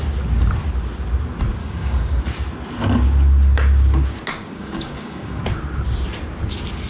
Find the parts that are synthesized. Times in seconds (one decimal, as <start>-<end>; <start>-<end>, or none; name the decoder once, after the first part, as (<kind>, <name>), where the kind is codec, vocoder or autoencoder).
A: 1.6-2.2 (codec, DAC); 4.4-5.4